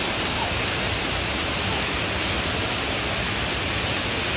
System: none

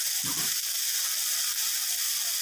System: none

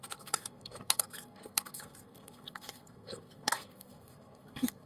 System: codec, SNAC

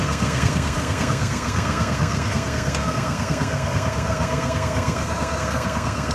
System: codec, SNAC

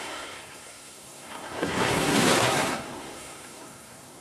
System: codec, SNAC